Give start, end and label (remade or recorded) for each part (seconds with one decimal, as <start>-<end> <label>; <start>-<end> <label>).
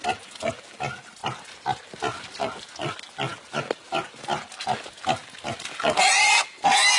0.0-7.0 recorded